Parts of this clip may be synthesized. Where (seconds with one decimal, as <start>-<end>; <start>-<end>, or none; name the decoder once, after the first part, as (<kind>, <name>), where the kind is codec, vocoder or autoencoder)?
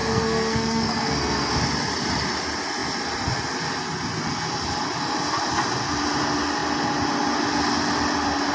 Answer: 0.0-1.5 (codec, SNAC)